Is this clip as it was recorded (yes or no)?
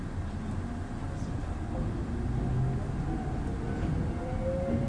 yes